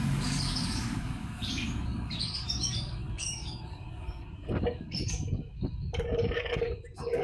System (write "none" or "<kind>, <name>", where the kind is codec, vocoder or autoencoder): codec, DAC